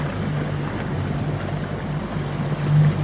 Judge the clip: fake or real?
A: real